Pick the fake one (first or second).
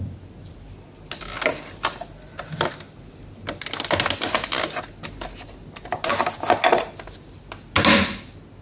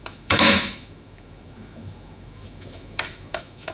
second